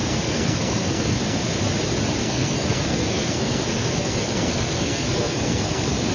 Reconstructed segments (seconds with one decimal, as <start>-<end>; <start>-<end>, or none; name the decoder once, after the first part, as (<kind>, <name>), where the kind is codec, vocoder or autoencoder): 0.0-1.5 (codec, SNAC); 2.2-6.1